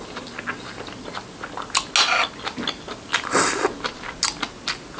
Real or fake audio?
real